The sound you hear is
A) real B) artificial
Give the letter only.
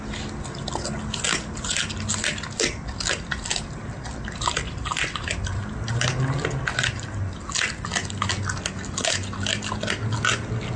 A